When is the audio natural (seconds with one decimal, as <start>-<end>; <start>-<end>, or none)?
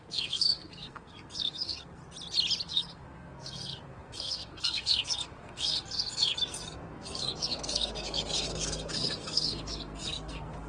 2.0-2.7